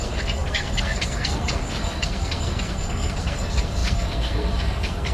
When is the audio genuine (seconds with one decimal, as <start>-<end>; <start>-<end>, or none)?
none